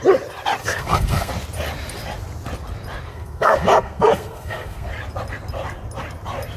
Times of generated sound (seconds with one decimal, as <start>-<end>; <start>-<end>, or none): 0.6-1.3; 3.1-4.9